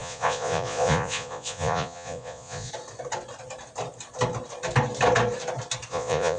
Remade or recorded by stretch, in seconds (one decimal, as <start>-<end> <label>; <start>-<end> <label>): 0.0-2.7 remade; 2.7-5.9 recorded; 5.9-6.4 remade